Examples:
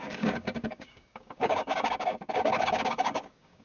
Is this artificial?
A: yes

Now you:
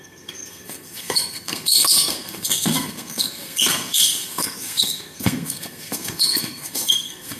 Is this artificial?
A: yes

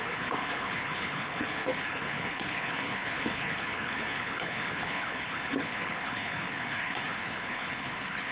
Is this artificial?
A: yes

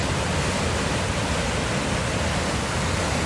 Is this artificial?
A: no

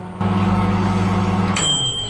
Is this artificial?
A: yes